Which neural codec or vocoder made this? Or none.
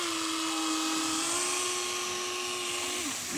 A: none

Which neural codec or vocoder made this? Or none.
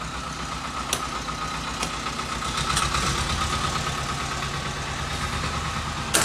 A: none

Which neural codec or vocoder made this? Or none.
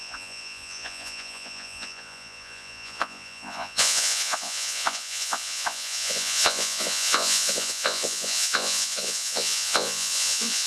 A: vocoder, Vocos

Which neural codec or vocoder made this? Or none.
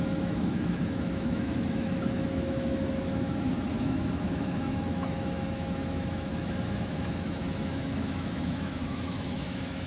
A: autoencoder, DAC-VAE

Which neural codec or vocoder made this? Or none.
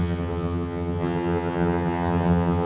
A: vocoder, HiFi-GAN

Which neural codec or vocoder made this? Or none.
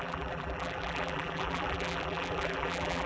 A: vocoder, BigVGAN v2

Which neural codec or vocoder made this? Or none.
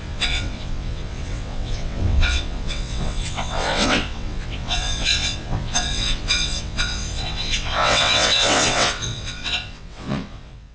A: vocoder, WaveNeXt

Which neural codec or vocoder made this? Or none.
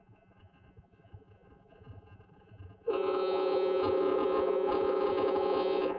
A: vocoder, Vocos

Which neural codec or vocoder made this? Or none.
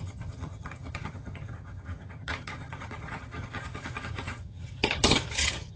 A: vocoder, HiFi-GAN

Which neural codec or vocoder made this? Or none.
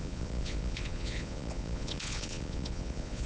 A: vocoder, Vocos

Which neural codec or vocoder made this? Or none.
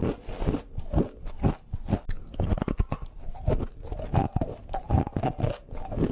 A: none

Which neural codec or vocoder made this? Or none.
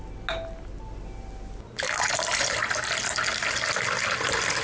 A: none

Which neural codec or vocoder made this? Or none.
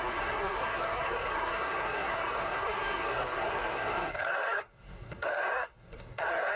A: codec, SNAC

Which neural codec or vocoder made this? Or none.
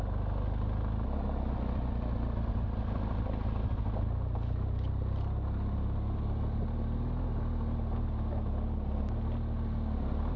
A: none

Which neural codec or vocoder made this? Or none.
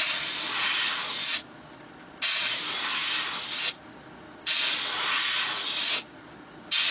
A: none